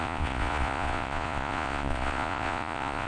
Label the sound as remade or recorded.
remade